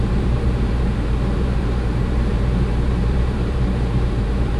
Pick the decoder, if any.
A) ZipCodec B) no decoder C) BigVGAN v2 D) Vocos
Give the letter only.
C